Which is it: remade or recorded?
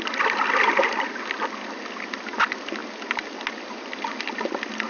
recorded